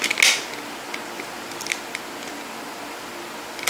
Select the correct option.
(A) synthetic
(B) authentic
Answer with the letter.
B